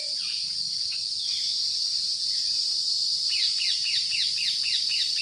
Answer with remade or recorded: remade